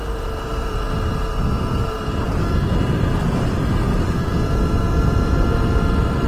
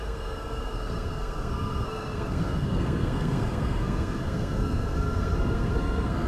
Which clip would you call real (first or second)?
first